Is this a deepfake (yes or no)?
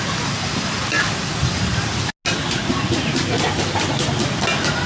no